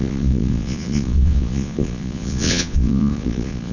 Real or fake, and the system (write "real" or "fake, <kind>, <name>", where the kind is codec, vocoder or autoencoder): fake, vocoder, Vocos